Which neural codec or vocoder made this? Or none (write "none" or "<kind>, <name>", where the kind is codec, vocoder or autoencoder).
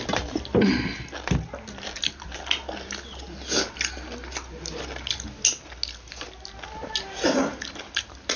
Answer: none